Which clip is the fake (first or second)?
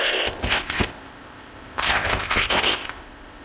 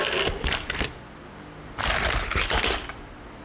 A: first